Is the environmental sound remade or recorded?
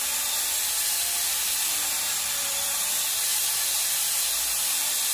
recorded